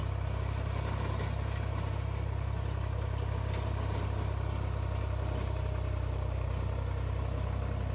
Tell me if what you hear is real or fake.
real